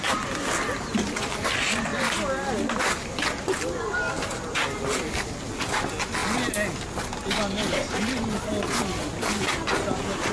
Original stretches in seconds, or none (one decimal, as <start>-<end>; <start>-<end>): 0.0-10.3